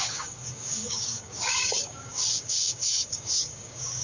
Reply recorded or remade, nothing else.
remade